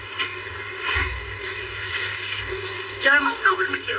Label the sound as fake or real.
fake